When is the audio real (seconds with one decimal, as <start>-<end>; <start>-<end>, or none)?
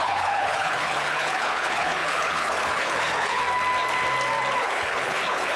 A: 3.4-4.6